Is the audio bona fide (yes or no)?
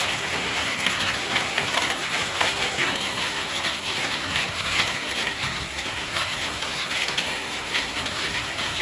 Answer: no